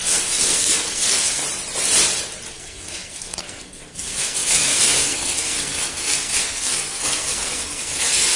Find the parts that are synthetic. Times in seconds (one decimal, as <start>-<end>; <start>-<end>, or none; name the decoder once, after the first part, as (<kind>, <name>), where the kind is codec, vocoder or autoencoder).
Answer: 0.0-1.4 (codec, SNAC); 2.5-8.4